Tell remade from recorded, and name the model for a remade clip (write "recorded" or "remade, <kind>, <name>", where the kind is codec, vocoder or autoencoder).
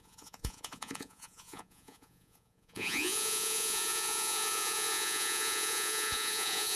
remade, vocoder, Vocos